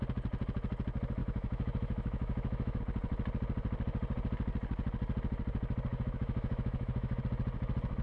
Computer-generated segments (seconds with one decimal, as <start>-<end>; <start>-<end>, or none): 1.2-2.8; 5.9-7.2